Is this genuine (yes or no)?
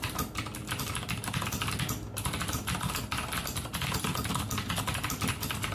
no